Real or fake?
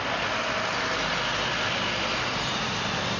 real